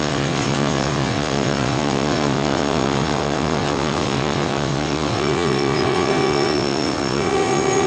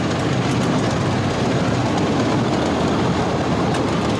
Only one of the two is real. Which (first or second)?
second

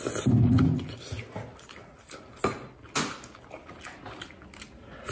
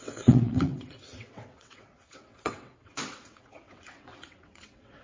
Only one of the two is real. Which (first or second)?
first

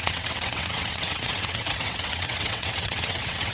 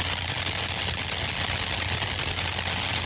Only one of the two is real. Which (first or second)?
second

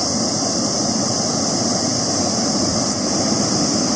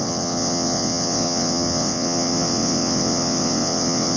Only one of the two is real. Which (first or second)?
first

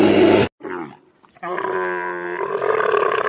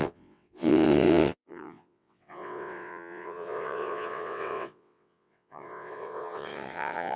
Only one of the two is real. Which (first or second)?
first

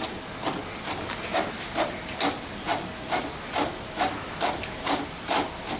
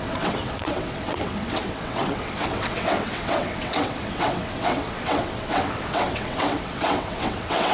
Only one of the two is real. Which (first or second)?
first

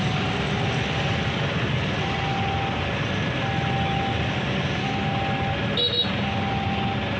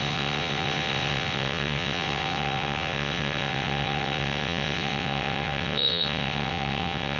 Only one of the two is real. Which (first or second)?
first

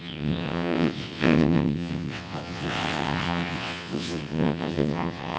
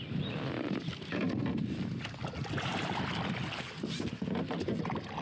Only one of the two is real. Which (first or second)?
second